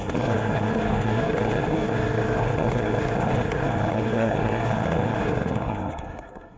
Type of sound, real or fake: fake